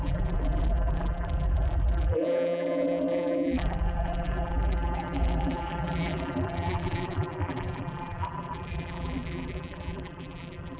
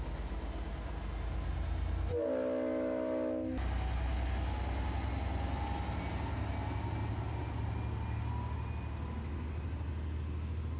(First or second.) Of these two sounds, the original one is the second